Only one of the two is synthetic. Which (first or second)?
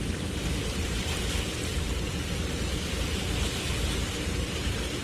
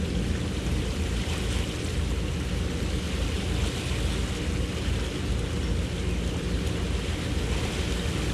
first